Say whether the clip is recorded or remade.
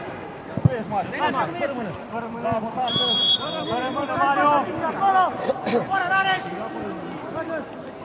recorded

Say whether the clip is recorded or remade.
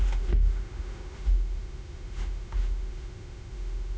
remade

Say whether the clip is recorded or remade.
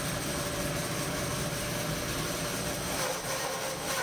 recorded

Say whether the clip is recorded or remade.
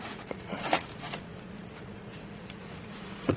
remade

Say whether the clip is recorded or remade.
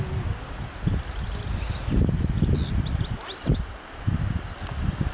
recorded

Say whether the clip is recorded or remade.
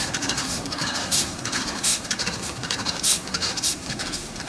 remade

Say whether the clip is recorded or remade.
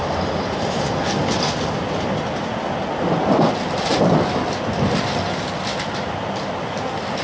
recorded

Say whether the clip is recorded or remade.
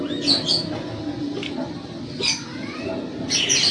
recorded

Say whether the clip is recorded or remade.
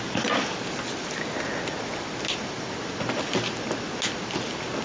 recorded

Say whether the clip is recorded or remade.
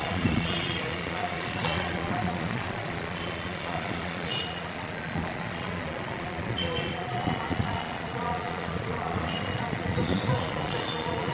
remade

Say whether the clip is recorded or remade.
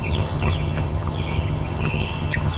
remade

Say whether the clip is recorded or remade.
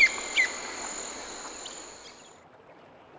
recorded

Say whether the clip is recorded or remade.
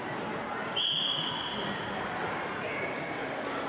recorded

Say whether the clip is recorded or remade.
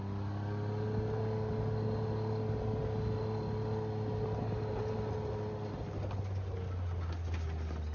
recorded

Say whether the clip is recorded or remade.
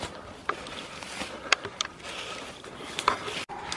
recorded